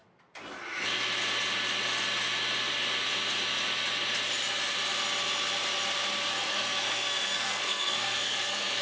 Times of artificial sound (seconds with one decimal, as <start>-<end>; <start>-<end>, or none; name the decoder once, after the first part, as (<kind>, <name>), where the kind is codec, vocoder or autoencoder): 6.3-8.8 (codec, SNAC)